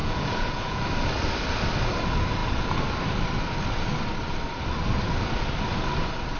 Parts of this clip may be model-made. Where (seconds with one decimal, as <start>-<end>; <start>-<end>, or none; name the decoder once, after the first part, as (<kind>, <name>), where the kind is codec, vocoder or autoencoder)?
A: 0.0-0.8 (vocoder, Vocos)